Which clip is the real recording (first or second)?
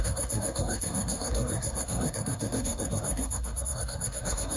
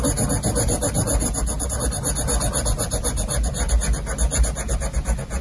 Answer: second